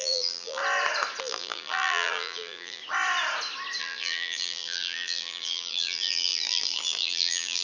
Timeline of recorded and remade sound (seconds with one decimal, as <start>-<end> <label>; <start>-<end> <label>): 0.0-0.6 remade; 0.6-1.2 recorded; 1.2-2.8 remade; 2.8-3.8 recorded; 3.8-7.6 remade